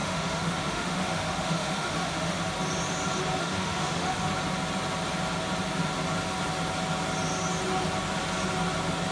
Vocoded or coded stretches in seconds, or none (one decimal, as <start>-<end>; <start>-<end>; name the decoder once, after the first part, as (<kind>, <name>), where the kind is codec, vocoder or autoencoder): 0.0-2.4 (autoencoder, DAC-VAE); 3.4-4.3